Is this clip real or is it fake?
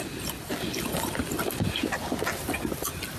real